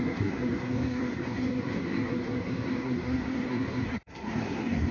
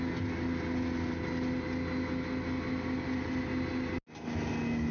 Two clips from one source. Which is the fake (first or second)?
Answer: first